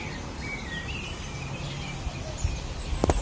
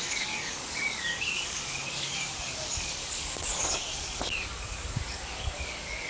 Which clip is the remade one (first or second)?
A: second